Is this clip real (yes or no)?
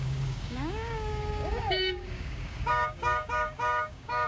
no